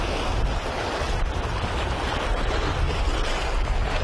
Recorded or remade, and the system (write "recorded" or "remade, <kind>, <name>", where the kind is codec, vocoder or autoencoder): recorded